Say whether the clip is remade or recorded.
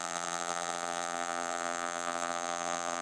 remade